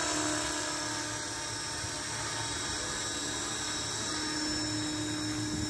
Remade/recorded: recorded